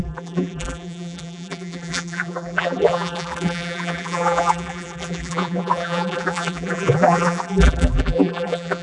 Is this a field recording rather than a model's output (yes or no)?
no